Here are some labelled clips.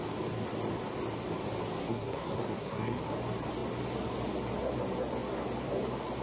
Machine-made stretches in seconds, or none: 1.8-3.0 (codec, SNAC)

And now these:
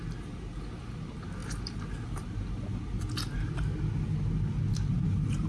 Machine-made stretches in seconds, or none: none

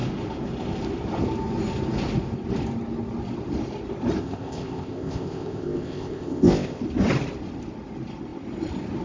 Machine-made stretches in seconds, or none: 4.2-6.8 (codec, ZipCodec)

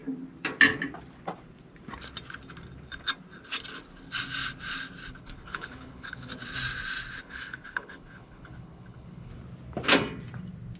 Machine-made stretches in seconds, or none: 5.2-6.3 (codec, HILCodec); 7.2-9.3

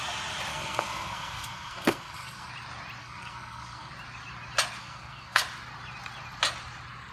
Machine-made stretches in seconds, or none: 0.5-2.5 (codec, SNAC); 3.0-3.9; 4.8-5.4